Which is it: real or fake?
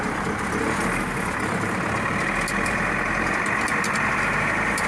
real